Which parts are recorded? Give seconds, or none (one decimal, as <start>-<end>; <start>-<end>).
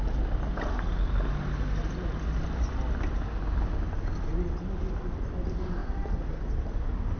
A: 0.0-5.8; 6.7-7.2